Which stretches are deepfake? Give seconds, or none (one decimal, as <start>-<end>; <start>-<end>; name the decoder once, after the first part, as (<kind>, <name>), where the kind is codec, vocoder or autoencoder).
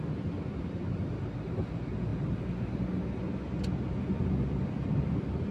none